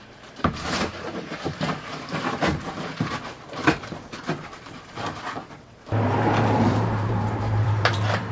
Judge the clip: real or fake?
fake